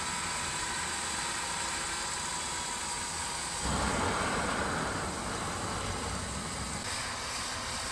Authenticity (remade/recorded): recorded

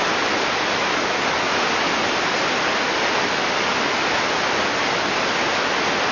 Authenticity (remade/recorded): recorded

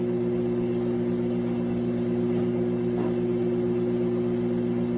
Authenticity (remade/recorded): recorded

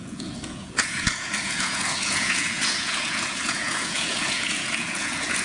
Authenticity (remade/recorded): remade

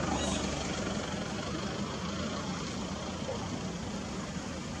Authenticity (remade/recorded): recorded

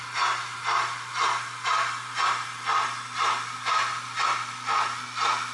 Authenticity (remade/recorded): recorded